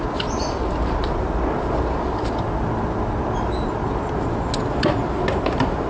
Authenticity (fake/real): real